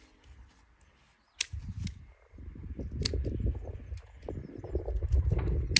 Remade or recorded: recorded